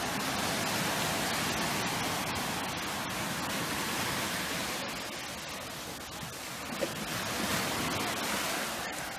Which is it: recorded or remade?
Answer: recorded